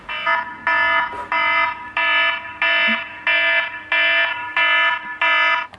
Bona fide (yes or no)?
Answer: yes